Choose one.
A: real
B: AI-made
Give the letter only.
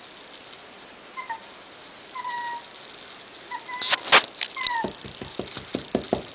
A